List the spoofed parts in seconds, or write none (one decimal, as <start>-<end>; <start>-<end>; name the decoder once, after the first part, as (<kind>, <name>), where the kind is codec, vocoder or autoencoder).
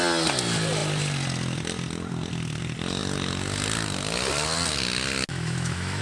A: 5.3-6.0 (autoencoder, DAC-VAE)